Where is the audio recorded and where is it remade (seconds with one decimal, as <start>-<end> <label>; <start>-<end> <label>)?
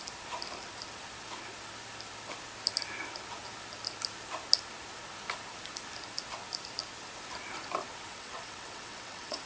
0.0-8.1 recorded; 8.1-9.5 remade